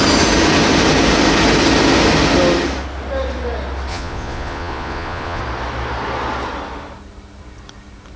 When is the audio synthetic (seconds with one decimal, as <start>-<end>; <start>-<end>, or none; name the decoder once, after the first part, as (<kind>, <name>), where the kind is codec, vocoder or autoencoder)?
3.9-5.4 (vocoder, Vocos)